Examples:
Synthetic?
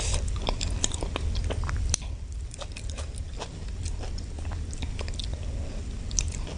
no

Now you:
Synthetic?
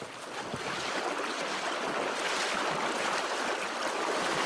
no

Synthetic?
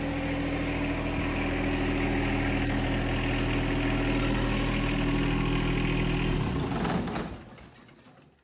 no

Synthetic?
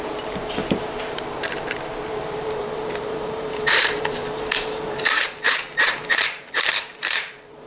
yes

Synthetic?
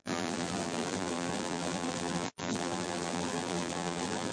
yes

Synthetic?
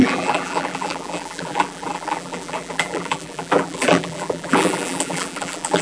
yes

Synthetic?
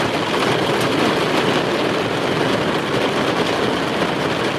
no